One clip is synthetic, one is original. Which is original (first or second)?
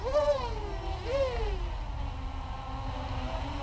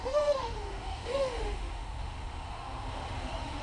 first